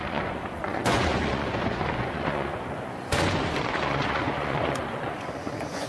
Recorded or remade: remade